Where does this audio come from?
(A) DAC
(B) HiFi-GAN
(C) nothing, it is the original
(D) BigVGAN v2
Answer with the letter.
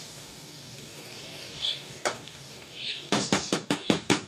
A